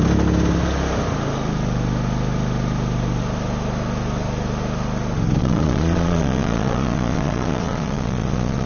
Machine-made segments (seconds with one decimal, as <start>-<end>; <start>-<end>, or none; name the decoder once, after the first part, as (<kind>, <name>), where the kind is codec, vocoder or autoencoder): 5.4-8.7 (vocoder, Vocos)